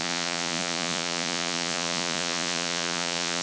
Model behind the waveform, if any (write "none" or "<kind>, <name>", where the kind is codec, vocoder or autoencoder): vocoder, Vocos